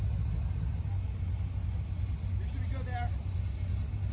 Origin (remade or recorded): recorded